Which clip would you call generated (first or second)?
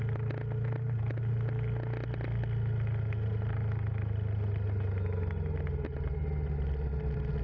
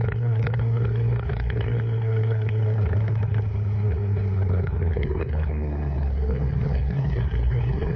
second